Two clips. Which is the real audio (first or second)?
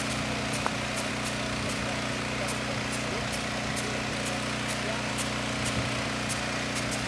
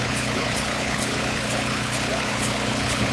first